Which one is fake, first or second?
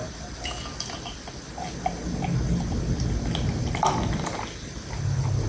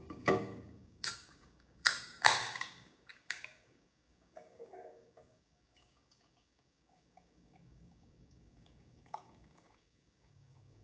second